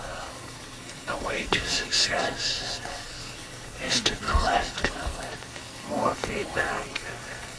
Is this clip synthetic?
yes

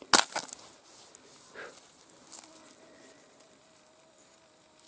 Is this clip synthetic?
no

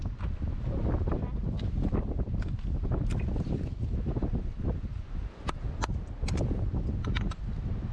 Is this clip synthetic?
no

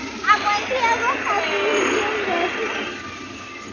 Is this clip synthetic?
no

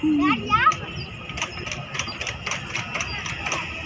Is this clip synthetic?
no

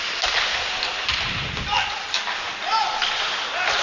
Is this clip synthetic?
no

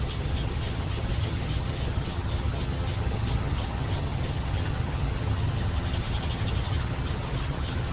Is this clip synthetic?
yes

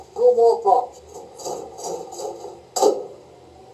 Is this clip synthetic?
no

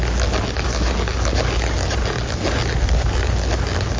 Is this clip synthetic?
no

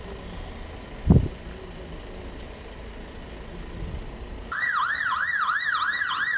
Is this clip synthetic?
no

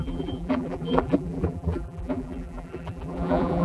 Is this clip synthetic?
yes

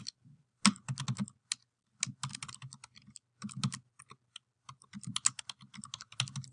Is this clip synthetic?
no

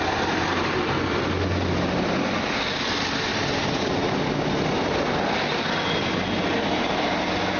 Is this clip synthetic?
no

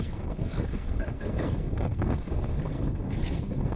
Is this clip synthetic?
yes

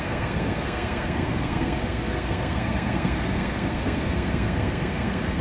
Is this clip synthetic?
yes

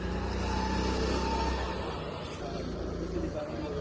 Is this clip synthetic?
no